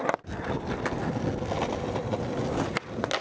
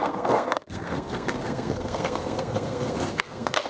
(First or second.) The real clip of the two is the first